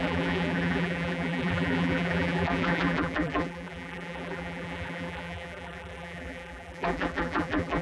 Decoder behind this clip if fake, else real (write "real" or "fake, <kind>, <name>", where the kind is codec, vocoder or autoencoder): fake, vocoder, BigVGAN v2